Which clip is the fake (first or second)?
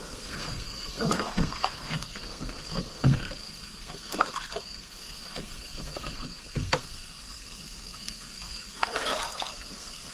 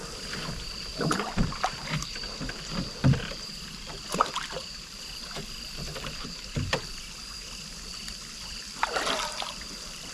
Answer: first